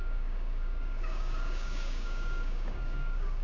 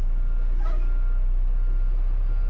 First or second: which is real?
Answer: second